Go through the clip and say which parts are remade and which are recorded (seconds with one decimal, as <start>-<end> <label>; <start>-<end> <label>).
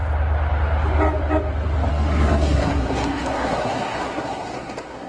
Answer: 0.0-1.9 recorded; 1.9-5.1 remade